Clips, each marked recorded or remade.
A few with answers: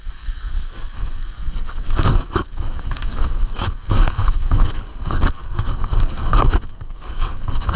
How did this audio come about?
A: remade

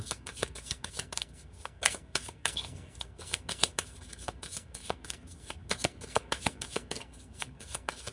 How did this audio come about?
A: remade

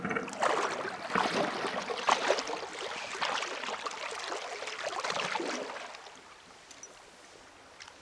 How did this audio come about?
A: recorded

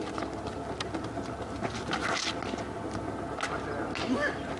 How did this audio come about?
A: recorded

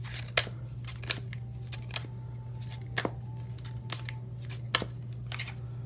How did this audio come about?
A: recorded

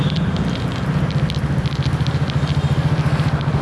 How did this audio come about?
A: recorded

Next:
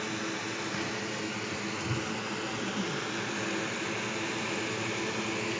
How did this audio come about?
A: recorded